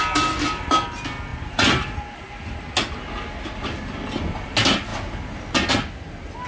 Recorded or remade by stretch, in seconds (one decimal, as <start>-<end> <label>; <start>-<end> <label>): 0.0-6.5 recorded